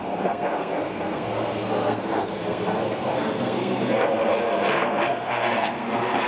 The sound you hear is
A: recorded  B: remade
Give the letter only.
B